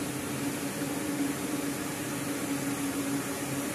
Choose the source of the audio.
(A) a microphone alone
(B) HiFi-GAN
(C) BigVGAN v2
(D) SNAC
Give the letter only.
A